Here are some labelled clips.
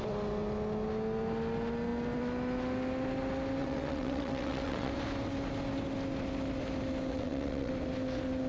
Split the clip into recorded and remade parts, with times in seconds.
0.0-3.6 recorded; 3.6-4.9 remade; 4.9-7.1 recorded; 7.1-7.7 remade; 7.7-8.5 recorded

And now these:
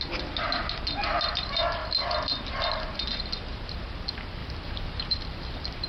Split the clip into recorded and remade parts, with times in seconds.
0.0-4.4 recorded; 4.4-5.9 remade

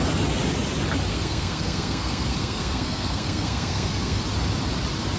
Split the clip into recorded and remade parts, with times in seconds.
0.0-1.1 recorded; 1.1-4.2 remade; 4.2-5.2 recorded

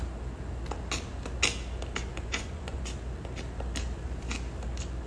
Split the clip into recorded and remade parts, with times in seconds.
0.0-2.1 recorded; 2.1-2.8 remade; 2.8-5.1 recorded

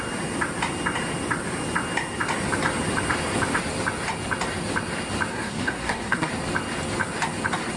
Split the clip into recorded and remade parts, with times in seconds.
0.0-5.3 recorded; 5.3-6.3 remade; 6.3-7.8 recorded

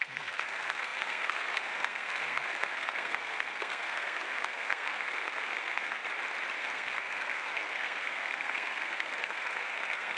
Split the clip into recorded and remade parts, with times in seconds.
0.0-6.0 remade; 6.0-6.6 recorded; 6.6-10.2 remade

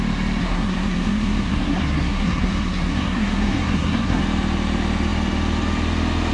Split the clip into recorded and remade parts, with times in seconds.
0.0-0.4 recorded; 0.4-4.2 remade; 4.2-6.3 recorded